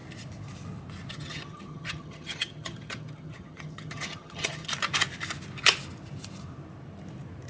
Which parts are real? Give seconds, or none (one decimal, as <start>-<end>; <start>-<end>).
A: 0.0-1.1; 4.7-7.5